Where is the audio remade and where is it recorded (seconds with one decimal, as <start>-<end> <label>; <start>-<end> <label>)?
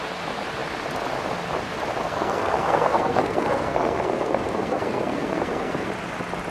0.0-2.0 recorded; 2.0-5.9 remade; 5.9-6.5 recorded